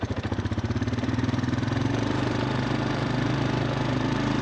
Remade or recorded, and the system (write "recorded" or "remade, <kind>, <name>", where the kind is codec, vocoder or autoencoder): remade, vocoder, BigVGAN v2